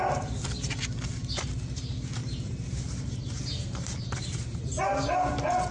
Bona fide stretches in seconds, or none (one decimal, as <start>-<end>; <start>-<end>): 0.0-2.2; 4.6-5.7